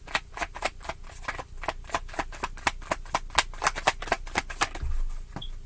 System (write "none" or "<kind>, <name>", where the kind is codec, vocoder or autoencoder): none